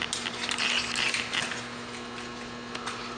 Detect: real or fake real